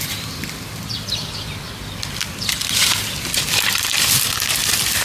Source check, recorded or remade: remade